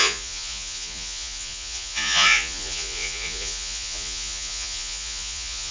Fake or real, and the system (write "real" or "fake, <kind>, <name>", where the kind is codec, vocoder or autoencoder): fake, vocoder, Vocos